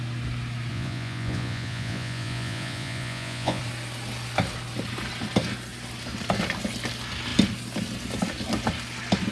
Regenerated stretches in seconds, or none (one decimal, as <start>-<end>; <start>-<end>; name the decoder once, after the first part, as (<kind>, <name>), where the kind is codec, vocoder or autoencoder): 0.7-3.6 (vocoder, Vocos)